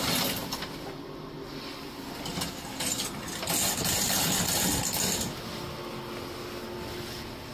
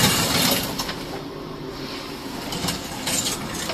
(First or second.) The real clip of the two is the first